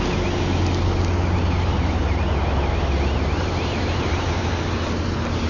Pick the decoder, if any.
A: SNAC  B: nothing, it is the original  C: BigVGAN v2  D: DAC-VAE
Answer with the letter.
B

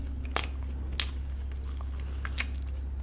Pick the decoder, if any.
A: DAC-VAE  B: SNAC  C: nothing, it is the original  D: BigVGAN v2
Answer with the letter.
C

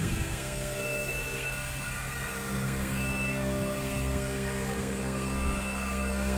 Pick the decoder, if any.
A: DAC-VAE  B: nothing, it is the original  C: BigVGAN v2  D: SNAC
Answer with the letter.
D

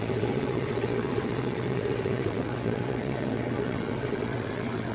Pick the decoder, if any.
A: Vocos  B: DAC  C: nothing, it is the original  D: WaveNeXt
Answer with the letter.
D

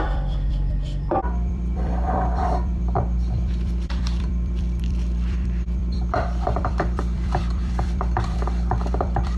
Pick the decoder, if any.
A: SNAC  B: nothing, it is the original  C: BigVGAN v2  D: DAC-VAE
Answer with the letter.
C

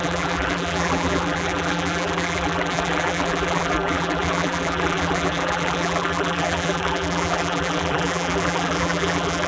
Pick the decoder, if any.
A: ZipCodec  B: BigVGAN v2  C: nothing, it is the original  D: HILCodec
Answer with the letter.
B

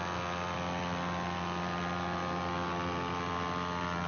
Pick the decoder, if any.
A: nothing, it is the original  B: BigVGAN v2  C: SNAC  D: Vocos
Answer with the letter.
A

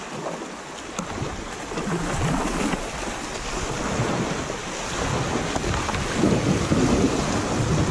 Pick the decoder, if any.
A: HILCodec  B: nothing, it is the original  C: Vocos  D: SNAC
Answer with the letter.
B